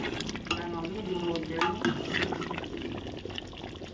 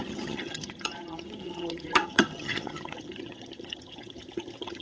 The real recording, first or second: first